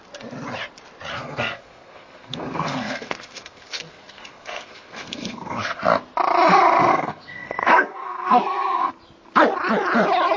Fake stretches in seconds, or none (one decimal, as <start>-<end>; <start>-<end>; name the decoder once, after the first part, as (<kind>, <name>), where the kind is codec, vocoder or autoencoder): 1.1-5.8 (codec, SNAC); 6.9-8.9